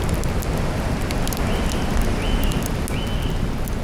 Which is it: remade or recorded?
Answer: recorded